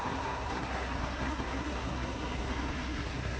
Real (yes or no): no